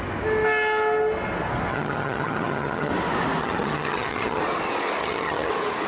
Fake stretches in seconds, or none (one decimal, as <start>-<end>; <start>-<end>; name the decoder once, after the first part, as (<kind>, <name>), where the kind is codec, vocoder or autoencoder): 1.7-2.9 (vocoder, HiFi-GAN); 3.4-4.4; 5.0-5.5